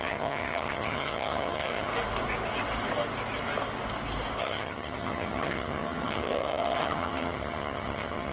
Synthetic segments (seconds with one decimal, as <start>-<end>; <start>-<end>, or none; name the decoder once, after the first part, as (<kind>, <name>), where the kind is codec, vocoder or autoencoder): 0.0-1.9 (vocoder, HiFi-GAN); 4.4-8.3

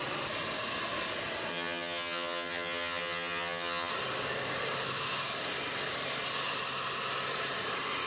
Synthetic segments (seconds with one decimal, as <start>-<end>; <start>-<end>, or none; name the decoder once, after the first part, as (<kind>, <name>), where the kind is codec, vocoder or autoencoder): 1.5-3.9 (vocoder, HiFi-GAN)

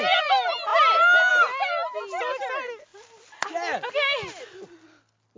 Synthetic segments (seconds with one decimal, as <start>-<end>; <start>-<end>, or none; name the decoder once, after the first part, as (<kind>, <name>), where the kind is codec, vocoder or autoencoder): none

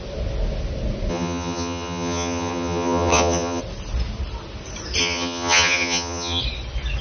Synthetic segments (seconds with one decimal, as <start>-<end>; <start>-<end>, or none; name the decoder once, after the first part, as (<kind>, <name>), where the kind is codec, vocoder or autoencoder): 1.1-3.6 (vocoder, HiFi-GAN); 5.0-6.4

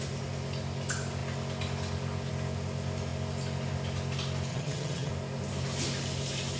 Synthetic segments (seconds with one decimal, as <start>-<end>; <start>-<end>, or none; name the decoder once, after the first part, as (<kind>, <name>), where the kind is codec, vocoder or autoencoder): 4.5-5.1 (vocoder, HiFi-GAN)

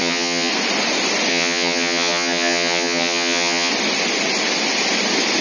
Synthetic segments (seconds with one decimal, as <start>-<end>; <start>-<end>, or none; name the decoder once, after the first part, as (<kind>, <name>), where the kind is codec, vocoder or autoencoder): 0.0-0.5 (vocoder, HiFi-GAN); 1.3-3.7

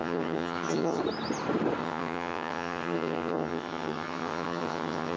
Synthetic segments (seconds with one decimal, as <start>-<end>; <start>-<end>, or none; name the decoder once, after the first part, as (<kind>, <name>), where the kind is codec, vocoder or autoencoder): 0.0-1.0 (vocoder, HiFi-GAN); 1.8-5.2